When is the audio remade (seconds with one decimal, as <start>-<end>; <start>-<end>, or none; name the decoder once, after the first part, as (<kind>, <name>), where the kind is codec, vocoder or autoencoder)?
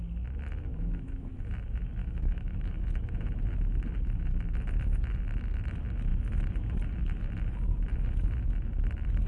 0.7-1.3 (autoencoder, DAC-VAE); 2.0-2.8